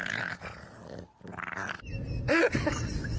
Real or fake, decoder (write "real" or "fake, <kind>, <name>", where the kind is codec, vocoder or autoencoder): real